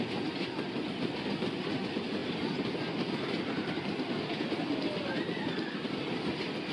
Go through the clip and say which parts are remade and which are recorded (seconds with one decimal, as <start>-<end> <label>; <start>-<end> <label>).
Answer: 0.0-6.7 recorded